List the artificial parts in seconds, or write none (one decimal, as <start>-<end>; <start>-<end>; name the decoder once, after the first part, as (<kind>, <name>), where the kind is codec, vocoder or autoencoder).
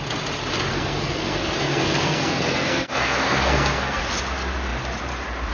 0.7-4.0 (codec, SNAC)